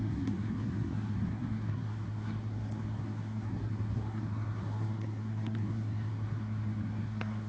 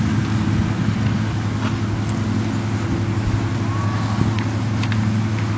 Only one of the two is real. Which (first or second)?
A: second